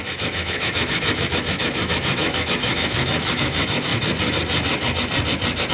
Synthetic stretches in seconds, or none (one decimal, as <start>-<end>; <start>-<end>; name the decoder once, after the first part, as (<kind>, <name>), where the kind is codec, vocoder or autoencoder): 0.0-3.9 (autoencoder, DAC-VAE)